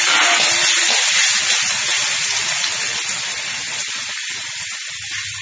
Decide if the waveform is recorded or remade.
recorded